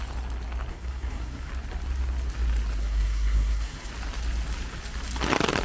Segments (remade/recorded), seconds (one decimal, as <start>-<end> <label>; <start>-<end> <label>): 0.0-0.7 recorded; 0.7-1.5 remade; 1.5-2.8 recorded; 2.8-3.9 remade; 3.9-5.6 recorded